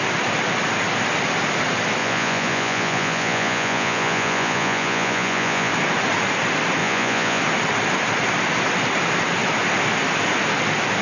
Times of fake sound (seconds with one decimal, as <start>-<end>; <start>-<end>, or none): 2.0-5.7; 6.8-7.4